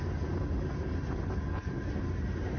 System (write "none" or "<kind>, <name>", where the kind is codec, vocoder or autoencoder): none